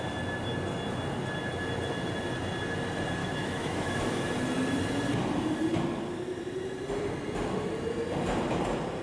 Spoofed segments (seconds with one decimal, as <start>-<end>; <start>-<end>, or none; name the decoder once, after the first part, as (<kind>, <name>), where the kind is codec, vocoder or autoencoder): 3.2-4.0 (autoencoder, DAC-VAE)